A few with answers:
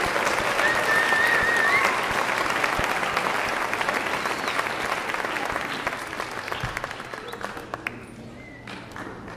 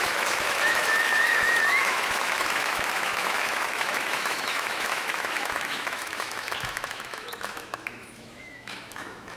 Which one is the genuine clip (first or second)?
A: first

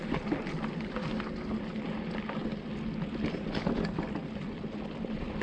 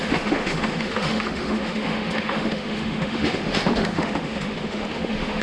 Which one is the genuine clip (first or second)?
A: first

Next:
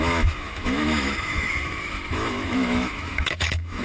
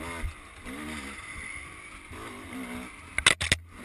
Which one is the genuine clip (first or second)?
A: second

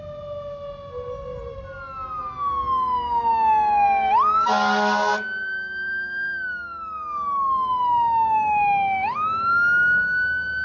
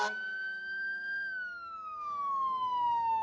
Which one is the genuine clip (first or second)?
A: first